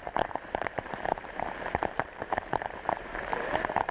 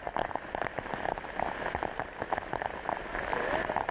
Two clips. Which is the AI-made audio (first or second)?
first